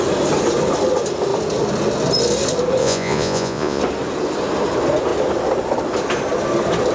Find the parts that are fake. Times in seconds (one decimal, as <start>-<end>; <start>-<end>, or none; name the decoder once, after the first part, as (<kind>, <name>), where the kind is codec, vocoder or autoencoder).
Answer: 2.8-3.8 (vocoder, Vocos)